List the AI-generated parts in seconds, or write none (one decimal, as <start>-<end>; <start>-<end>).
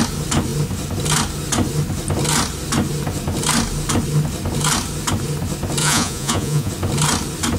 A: 5.8-6.7